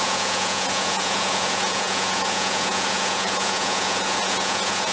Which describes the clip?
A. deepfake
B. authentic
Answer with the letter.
A